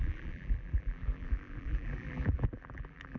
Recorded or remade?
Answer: remade